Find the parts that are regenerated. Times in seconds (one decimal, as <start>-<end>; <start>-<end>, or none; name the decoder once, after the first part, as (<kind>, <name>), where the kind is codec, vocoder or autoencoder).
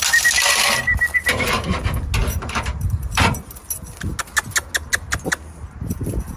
1.3-1.8 (vocoder, BigVGAN v2); 2.2-3.6